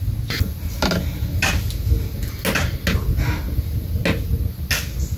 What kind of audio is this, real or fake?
real